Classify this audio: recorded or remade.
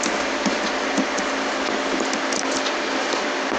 recorded